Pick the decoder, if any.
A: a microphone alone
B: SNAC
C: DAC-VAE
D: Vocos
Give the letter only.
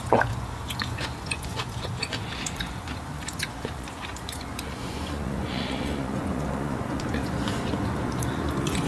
D